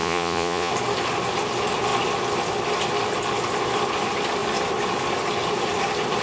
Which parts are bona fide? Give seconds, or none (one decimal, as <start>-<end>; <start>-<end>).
0.7-6.2